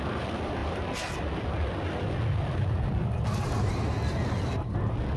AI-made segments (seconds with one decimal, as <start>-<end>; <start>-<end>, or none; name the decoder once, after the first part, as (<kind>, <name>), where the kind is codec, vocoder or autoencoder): none